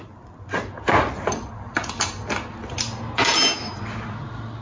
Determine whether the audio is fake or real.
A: real